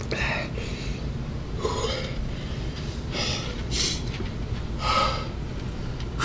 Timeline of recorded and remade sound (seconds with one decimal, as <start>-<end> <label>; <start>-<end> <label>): 0.0-0.7 recorded; 0.7-4.4 remade; 4.4-6.2 recorded